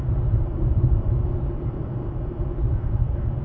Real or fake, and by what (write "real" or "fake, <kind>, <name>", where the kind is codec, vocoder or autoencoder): real